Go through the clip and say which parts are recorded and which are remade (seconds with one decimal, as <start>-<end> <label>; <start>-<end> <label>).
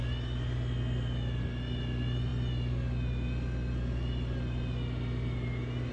0.0-5.9 recorded